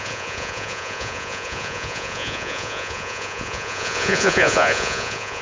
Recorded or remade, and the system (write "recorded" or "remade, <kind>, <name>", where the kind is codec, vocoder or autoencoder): remade, vocoder, Vocos